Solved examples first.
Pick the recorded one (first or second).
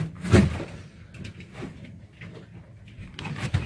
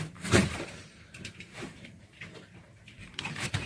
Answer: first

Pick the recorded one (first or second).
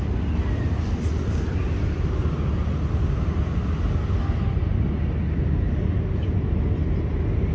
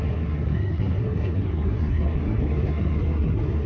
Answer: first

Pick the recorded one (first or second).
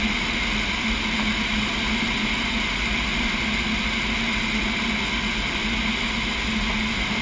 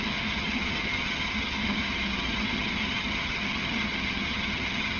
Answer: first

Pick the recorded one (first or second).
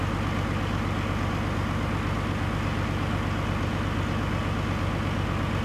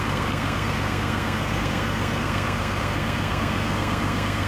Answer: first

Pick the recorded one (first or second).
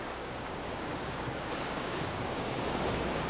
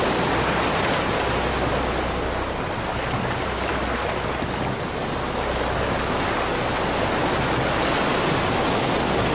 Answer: second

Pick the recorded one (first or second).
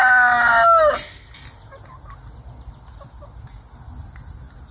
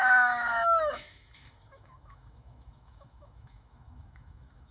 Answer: first